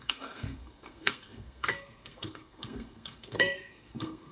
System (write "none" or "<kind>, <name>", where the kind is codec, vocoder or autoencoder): codec, SNAC